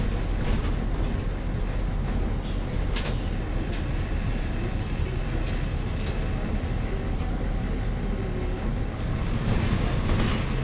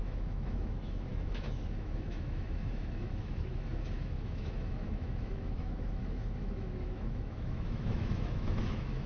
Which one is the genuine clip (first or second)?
first